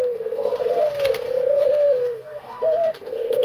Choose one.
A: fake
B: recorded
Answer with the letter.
A